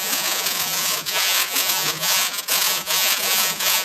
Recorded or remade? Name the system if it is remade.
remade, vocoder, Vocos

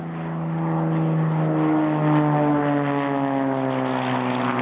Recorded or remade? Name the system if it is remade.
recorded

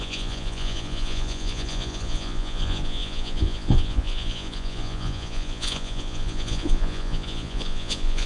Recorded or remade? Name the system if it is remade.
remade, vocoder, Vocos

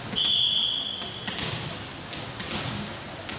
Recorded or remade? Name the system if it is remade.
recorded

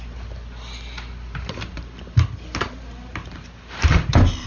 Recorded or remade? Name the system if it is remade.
recorded